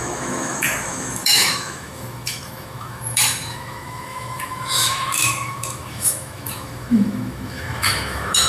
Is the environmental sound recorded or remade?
remade